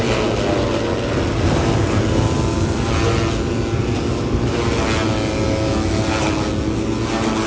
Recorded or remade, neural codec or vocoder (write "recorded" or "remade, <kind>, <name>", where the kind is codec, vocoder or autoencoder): recorded